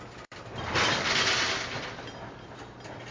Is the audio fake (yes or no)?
no